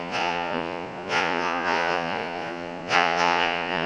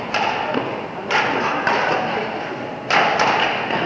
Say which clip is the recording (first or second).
second